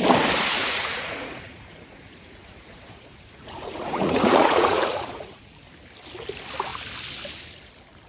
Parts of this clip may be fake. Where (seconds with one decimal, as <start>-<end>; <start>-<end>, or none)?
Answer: 0.6-5.5